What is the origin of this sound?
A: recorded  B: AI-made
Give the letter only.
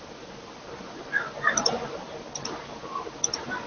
A